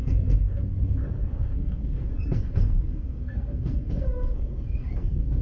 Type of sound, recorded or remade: remade